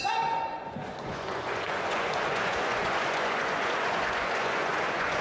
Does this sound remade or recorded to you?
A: remade